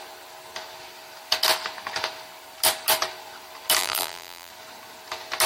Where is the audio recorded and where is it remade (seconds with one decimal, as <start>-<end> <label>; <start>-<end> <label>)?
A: 0.0-3.8 recorded; 3.8-4.5 remade; 4.5-5.5 recorded